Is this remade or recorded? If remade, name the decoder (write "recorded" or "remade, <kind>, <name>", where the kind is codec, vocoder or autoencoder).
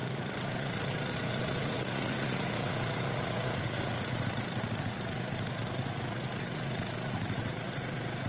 remade, vocoder, Vocos